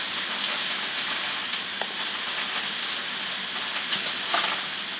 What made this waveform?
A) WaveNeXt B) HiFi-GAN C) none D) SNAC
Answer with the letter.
C